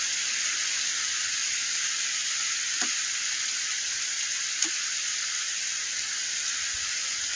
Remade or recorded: recorded